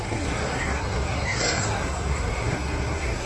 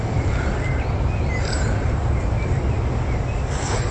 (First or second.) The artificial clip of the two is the first